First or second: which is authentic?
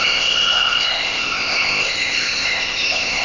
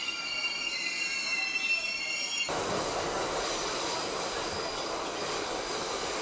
second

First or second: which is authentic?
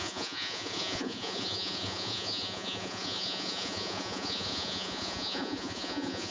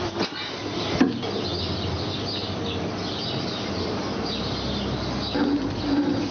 second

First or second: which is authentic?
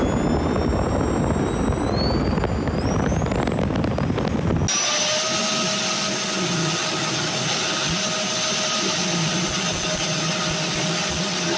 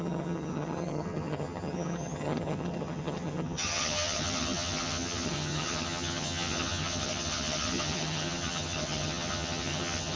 first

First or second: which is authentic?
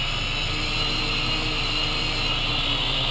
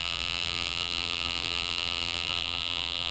first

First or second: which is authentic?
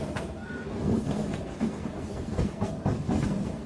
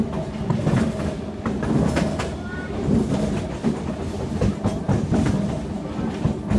second